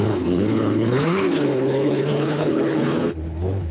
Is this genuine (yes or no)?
no